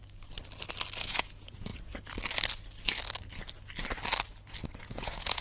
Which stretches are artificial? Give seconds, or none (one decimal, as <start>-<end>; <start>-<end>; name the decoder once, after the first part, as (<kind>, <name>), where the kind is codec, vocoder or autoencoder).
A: 1.0-1.7 (vocoder, Vocos); 4.8-5.4